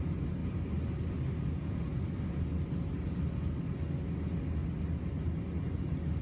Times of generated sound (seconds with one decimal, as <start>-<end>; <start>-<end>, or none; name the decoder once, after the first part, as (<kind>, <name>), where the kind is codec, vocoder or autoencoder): 4.6-5.4 (vocoder, BigVGAN v2)